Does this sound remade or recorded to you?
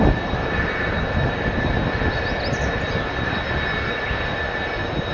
recorded